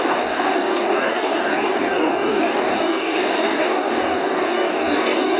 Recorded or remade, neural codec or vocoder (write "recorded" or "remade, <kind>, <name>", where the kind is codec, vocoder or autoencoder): remade, codec, DAC